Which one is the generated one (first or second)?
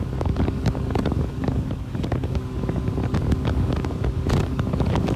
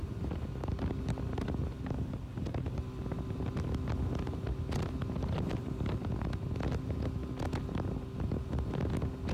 first